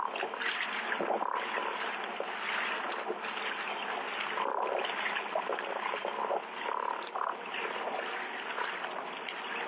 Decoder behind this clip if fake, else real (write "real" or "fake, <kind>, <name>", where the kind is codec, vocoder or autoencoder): real